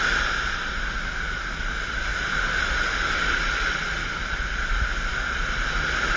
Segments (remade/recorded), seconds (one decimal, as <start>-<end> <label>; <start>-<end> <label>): 0.0-6.2 recorded